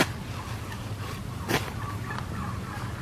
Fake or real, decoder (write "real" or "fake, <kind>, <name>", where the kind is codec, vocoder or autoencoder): real